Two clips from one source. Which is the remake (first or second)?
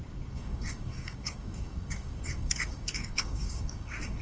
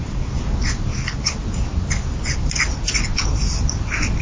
first